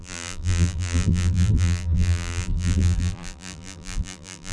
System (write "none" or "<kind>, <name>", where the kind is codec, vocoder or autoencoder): vocoder, BigVGAN v2